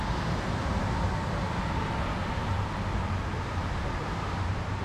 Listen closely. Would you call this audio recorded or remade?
recorded